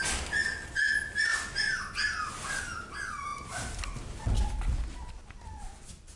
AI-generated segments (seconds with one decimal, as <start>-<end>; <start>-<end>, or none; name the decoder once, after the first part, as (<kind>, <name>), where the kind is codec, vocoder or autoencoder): none